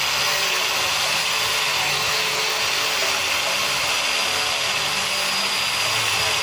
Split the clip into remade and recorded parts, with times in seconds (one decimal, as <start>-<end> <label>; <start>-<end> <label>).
0.0-1.7 recorded; 1.7-2.6 remade; 2.6-6.4 recorded